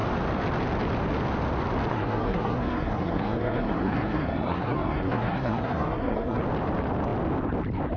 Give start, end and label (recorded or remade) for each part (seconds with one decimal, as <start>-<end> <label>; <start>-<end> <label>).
0.0-1.9 recorded; 1.9-6.4 remade; 6.4-8.0 recorded